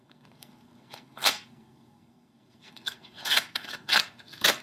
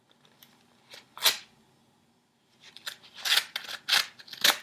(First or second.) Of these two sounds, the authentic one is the second